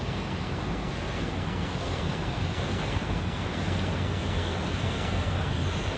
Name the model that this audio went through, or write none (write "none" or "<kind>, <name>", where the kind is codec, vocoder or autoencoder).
codec, SNAC